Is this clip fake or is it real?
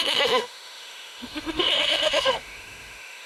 fake